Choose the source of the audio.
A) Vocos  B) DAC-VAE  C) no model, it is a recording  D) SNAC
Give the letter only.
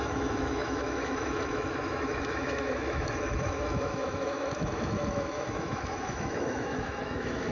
B